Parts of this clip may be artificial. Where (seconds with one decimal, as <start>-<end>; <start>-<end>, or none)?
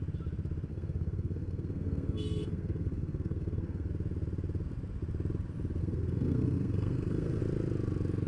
0.7-3.9; 5.8-7.4